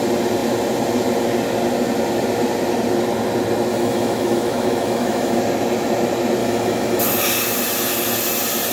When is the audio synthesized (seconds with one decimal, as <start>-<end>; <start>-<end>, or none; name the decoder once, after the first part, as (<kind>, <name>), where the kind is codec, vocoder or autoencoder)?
3.7-5.4 (autoencoder, DAC-VAE); 6.4-7.0